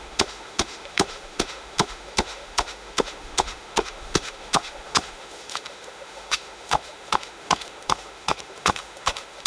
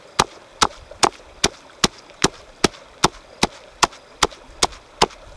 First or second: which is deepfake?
first